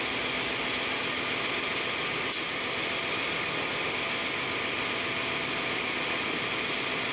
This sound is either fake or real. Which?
real